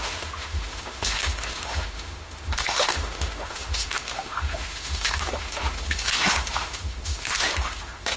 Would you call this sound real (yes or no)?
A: no